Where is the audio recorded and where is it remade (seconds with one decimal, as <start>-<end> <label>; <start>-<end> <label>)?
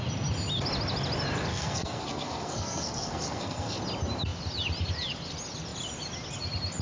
0.0-1.5 recorded; 1.5-3.8 remade; 3.8-6.8 recorded